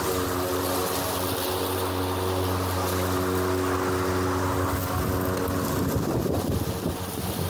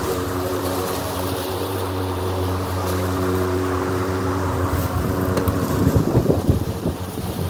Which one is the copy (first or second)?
second